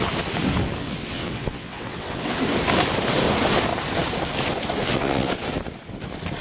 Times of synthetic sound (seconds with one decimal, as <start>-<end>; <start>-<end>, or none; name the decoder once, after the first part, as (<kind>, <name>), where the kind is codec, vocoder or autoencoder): 0.8-2.4 (vocoder, WaveNeXt); 4.8-5.3